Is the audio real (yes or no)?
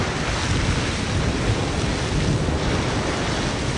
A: yes